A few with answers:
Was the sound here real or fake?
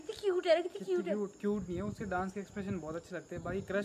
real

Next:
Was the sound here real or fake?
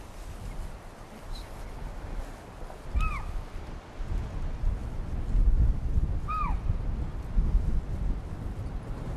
real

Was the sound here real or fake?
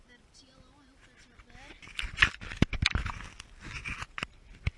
real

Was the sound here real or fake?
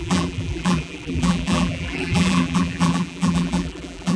fake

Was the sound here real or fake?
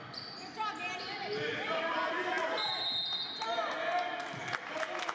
real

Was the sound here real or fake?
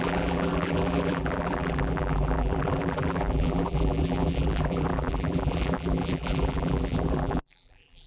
fake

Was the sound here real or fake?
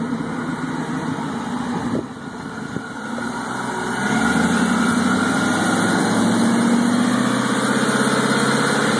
real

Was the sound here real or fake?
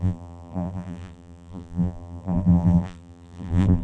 fake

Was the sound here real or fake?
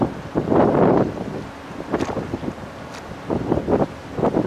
real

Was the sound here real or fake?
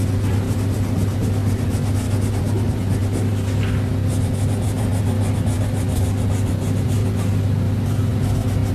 real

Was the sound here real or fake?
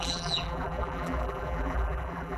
fake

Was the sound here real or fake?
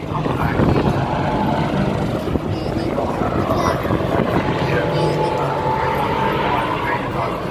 real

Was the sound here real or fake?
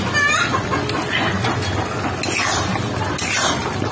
real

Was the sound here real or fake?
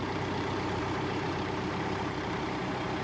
fake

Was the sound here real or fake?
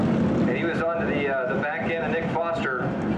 real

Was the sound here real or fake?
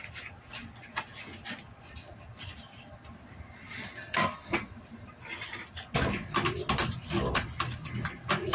real